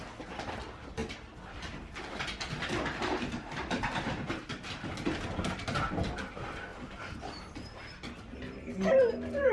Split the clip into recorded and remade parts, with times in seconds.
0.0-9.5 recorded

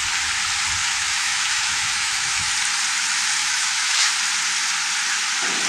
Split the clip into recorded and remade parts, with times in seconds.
0.0-0.8 recorded; 0.8-2.5 remade; 2.5-3.4 recorded; 3.4-4.1 remade; 4.1-5.7 recorded

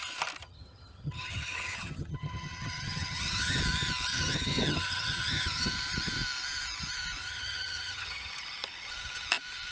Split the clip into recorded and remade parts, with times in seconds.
0.0-0.4 recorded; 0.4-3.6 remade; 3.6-4.1 recorded; 4.1-5.7 remade; 5.7-7.2 recorded; 7.2-8.3 remade; 8.3-9.7 recorded

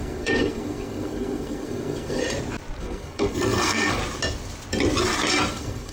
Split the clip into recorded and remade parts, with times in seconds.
0.0-2.2 remade; 2.2-2.8 recorded; 2.8-4.0 remade; 4.0-5.5 recorded; 5.5-5.9 remade